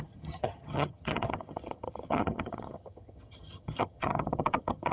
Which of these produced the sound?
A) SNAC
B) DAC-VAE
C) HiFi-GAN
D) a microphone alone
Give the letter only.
C